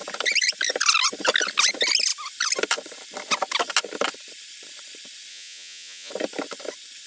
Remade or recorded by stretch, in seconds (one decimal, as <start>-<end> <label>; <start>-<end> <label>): 0.0-5.3 recorded; 5.3-6.1 remade; 6.1-7.1 recorded